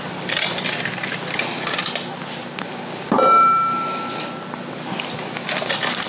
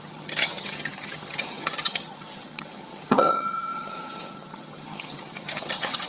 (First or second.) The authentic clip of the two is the first